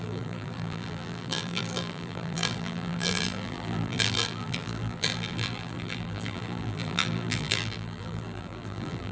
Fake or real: fake